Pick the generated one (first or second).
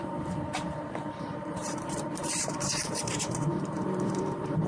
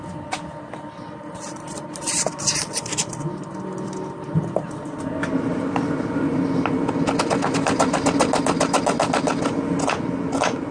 first